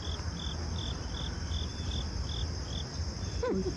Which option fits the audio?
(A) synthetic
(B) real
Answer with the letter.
B